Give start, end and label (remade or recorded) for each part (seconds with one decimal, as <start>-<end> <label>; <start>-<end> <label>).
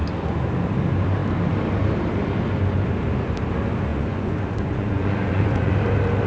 0.0-3.9 recorded; 3.9-5.7 remade; 5.7-6.3 recorded